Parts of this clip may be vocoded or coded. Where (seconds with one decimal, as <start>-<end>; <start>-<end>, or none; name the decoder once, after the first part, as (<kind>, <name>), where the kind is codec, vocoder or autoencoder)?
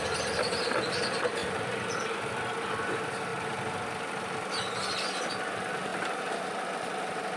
1.4-2.3 (vocoder, BigVGAN v2); 5.9-6.6